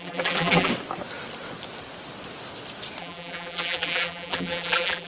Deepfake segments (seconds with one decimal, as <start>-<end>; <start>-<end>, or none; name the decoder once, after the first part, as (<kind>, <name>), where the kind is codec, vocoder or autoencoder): 0.0-0.7 (vocoder, BigVGAN v2); 3.0-5.1